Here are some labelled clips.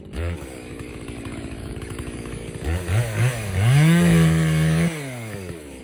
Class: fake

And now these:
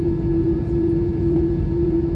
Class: fake